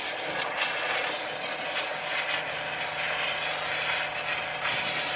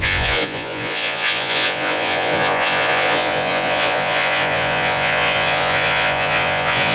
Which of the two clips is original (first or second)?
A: first